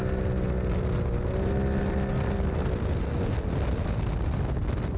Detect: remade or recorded recorded